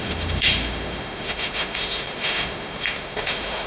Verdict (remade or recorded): remade